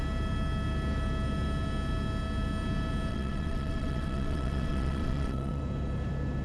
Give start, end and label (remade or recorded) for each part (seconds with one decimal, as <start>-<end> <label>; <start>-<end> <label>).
0.0-3.1 recorded; 3.1-5.6 remade; 5.6-6.4 recorded